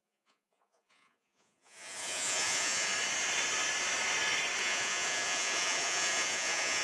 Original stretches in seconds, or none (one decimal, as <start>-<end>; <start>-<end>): 2.9-4.6